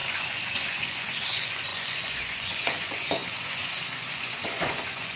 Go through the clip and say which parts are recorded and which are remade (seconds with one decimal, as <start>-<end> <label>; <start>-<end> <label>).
0.0-5.2 remade